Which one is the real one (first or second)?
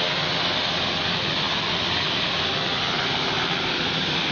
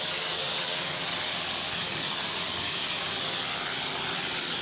first